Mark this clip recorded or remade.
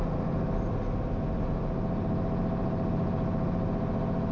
recorded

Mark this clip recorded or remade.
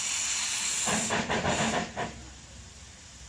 remade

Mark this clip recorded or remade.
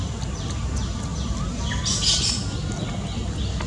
recorded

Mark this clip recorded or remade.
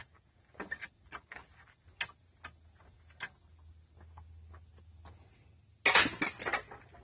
recorded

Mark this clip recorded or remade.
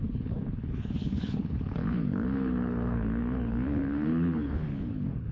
remade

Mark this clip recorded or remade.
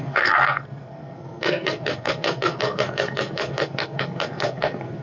remade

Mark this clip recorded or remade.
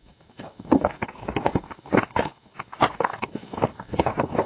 remade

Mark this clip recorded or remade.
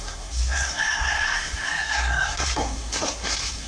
remade